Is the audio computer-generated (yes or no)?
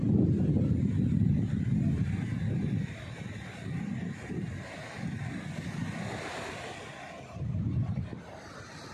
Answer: no